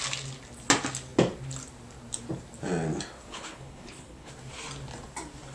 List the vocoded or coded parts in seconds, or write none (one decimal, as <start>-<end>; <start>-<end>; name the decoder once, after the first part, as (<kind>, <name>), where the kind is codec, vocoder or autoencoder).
3.3-4.3 (codec, HILCodec)